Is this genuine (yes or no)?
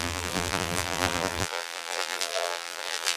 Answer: no